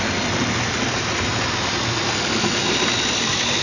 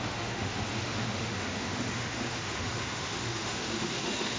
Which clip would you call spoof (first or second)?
second